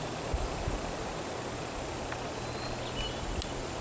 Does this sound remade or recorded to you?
recorded